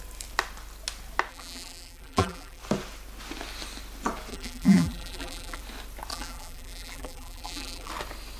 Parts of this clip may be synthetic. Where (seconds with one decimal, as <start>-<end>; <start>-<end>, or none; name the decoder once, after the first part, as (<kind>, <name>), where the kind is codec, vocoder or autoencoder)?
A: 1.3-2.6 (vocoder, BigVGAN v2); 4.3-5.6; 6.1-7.9